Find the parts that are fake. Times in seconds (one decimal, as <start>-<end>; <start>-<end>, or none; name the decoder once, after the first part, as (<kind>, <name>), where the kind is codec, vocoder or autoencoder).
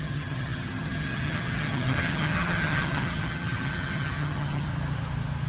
0.0-4.7 (vocoder, HiFi-GAN)